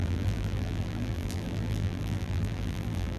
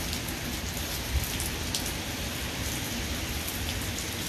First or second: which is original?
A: second